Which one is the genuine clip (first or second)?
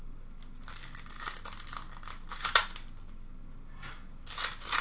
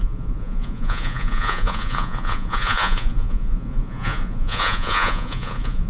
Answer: first